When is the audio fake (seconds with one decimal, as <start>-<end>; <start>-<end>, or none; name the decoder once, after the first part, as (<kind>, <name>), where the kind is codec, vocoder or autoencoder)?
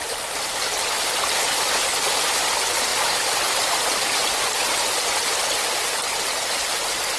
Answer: none